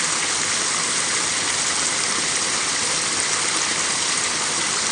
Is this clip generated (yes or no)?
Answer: no